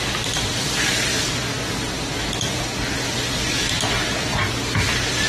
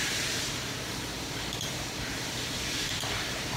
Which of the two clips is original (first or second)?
first